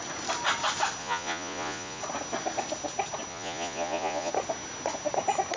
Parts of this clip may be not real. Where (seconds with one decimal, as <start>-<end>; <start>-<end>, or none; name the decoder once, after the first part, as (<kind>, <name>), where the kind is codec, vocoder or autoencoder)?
1.0-2.0 (vocoder, Vocos); 3.3-4.3

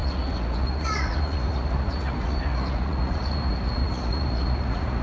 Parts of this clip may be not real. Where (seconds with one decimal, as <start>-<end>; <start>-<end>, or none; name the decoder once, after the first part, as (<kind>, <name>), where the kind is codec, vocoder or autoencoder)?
0.0-5.0 (vocoder, Vocos)

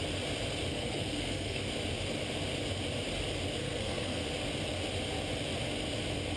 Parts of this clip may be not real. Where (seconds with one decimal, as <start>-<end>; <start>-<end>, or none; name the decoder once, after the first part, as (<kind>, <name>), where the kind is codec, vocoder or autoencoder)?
0.7-1.6 (codec, SNAC); 3.6-4.2

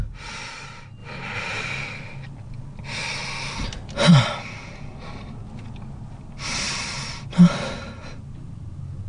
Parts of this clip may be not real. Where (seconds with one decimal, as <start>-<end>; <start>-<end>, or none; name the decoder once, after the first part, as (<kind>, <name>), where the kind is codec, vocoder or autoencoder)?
none

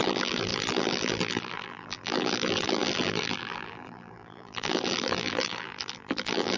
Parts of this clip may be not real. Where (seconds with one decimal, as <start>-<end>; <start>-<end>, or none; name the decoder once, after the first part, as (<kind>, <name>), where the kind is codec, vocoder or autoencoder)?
0.0-6.6 (vocoder, BigVGAN v2)

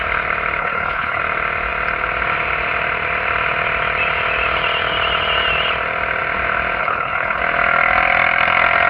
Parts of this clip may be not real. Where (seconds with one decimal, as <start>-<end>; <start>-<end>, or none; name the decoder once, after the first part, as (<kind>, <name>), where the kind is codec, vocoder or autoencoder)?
0.6-1.2 (codec, HILCodec); 6.8-7.4